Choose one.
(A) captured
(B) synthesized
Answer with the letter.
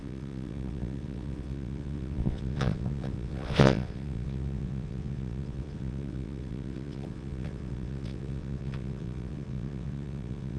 B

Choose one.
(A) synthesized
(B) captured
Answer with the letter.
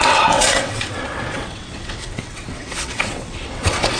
A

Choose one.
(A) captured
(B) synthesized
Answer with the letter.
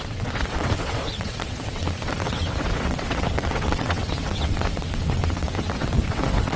B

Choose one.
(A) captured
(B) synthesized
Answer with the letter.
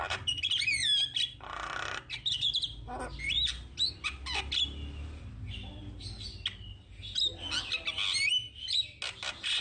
A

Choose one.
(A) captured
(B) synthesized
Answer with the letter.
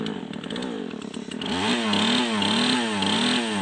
A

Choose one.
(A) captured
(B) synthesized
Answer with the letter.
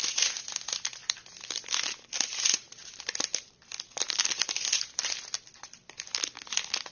A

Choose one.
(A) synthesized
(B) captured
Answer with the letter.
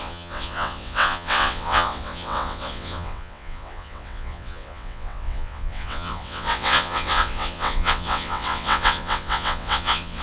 A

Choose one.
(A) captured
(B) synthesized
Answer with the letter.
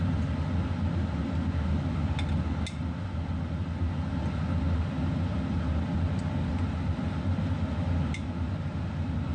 A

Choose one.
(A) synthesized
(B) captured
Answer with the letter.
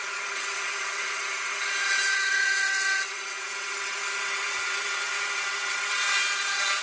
A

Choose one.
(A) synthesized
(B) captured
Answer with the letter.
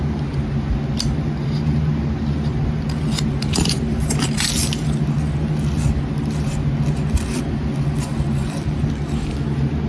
B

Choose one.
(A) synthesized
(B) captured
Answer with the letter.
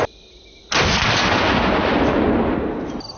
B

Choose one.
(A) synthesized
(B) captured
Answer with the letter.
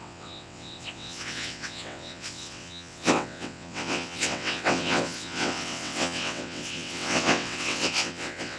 A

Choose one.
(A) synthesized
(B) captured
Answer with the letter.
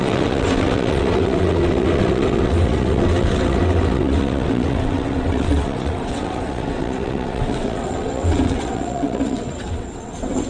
A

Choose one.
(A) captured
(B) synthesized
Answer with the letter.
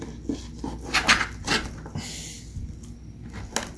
A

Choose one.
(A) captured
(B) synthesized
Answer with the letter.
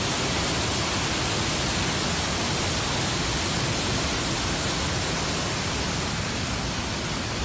A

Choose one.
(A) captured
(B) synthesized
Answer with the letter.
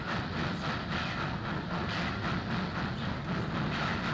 A